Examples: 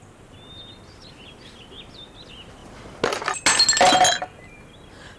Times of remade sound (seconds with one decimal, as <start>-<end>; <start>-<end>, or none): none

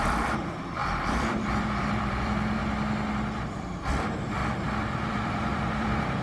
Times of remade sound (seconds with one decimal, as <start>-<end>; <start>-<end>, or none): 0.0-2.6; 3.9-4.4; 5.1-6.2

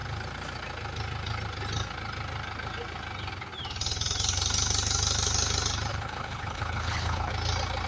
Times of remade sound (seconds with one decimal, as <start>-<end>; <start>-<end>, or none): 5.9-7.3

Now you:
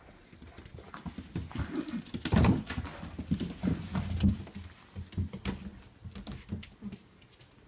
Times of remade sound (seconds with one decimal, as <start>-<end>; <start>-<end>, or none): none

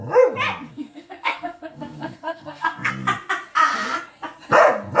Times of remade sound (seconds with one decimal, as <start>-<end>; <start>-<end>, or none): 0.7-2.9